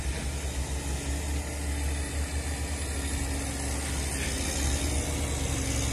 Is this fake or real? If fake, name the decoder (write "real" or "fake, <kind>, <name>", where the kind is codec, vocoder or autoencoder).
real